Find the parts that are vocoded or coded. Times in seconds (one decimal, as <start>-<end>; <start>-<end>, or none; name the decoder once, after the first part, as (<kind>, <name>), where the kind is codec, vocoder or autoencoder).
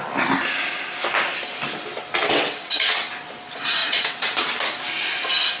2.2-3.1 (vocoder, WaveNeXt); 3.8-4.5